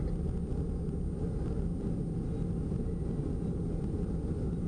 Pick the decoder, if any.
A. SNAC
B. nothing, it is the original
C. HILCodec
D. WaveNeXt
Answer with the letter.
B